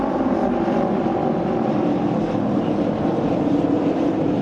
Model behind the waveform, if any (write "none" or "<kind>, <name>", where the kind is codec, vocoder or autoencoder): vocoder, BigVGAN v2